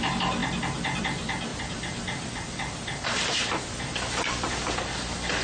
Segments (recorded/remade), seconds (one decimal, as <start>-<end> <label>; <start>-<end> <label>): 0.0-1.5 recorded; 1.5-4.7 remade; 4.7-5.4 recorded